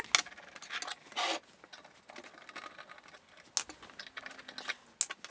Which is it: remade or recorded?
recorded